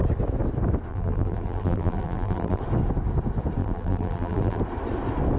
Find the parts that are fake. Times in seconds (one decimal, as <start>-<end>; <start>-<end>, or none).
0.9-2.6; 3.6-4.6